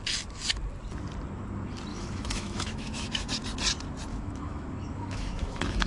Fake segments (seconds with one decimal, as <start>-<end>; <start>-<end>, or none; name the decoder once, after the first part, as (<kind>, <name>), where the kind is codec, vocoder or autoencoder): 1.9-3.3 (autoencoder, DAC-VAE); 4.1-5.9